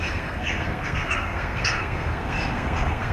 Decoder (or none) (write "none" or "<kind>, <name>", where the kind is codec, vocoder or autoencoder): codec, SNAC